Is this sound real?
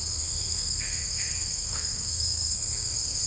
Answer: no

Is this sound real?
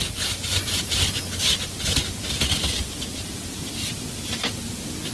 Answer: yes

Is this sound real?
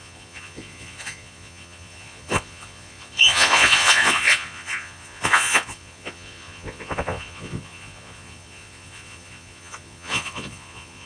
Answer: no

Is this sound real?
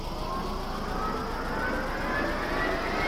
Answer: yes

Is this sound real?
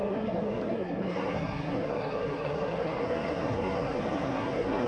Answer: no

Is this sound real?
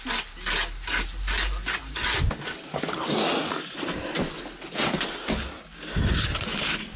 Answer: yes